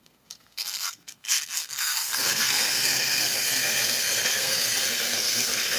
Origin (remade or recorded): remade